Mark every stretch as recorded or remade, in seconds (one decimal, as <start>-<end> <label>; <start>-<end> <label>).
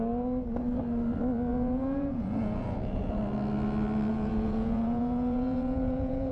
0.0-1.5 recorded; 1.5-3.2 remade; 3.2-4.1 recorded; 4.1-6.3 remade